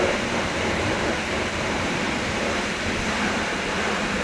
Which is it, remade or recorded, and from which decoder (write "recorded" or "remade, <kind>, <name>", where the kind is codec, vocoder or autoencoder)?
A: remade, vocoder, BigVGAN v2